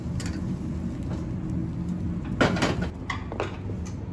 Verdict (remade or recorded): recorded